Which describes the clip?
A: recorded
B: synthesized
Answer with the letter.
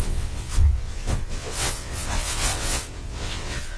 B